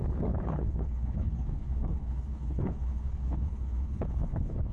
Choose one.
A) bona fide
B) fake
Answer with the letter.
B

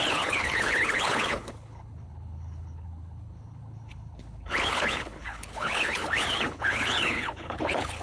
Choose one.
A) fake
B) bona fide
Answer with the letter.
A